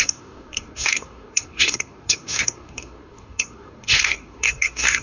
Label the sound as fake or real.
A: fake